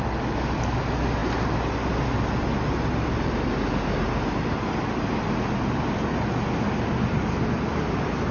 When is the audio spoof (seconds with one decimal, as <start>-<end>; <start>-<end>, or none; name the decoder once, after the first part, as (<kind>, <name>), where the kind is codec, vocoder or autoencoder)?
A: none